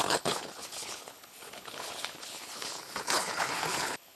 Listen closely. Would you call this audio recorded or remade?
remade